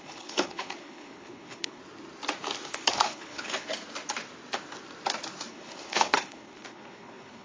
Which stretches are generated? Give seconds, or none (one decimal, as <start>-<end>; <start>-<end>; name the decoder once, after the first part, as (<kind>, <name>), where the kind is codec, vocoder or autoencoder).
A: 0.0-1.8 (codec, HILCodec); 2.7-3.7; 5.5-7.4